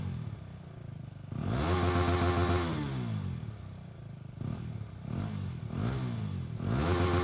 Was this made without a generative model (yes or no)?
yes